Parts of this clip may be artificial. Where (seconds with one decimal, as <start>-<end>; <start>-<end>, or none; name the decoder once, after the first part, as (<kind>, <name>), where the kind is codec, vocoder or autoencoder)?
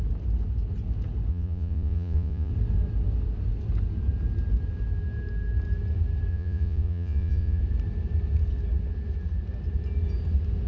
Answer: 1.3-2.5 (vocoder, Vocos); 6.3-7.6